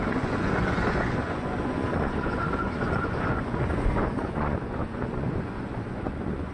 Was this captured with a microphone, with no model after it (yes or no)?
no